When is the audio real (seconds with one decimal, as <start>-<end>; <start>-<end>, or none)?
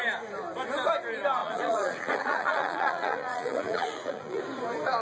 0.0-1.4; 4.4-5.0